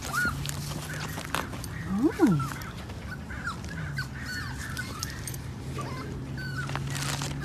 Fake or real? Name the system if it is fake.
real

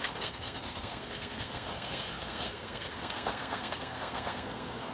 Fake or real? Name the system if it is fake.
fake, codec, SNAC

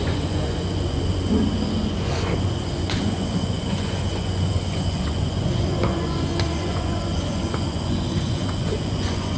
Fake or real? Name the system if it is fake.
fake, vocoder, Vocos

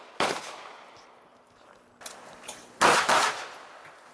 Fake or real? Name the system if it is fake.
real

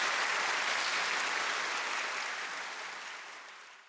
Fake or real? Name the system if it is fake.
real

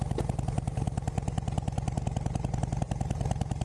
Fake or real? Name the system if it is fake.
real